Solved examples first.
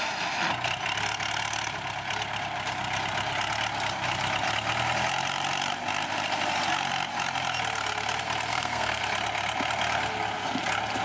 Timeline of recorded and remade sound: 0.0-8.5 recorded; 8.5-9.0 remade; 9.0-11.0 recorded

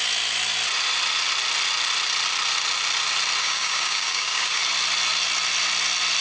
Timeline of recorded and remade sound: 0.0-3.4 recorded; 3.4-4.6 remade; 4.6-6.2 recorded

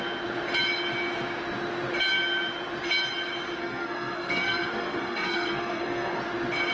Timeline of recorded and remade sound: 0.0-3.6 recorded; 3.6-6.2 remade; 6.2-6.7 recorded

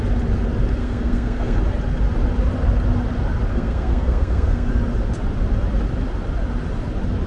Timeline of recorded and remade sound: 0.0-0.8 recorded; 0.8-1.6 remade; 1.6-3.5 recorded; 3.5-4.7 remade; 4.7-7.3 recorded

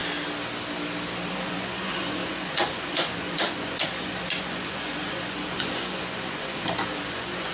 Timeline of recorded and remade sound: 0.0-1.3 recorded; 1.3-7.5 remade